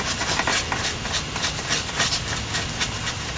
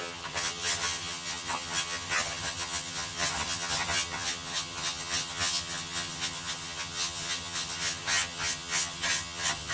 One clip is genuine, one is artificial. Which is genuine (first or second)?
first